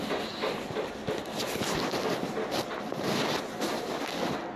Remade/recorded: recorded